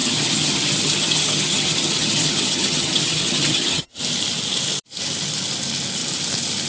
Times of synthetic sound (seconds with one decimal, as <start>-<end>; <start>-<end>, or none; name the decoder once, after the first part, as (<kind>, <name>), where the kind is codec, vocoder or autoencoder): 0.0-4.0 (vocoder, HiFi-GAN)